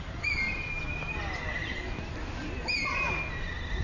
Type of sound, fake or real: real